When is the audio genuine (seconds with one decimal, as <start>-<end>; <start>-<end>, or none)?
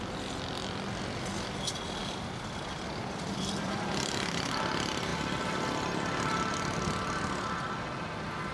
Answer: 0.0-2.0; 4.5-5.1; 5.6-8.5